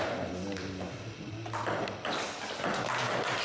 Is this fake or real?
real